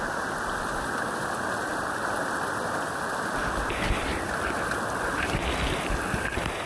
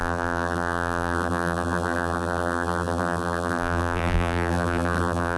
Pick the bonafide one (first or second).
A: first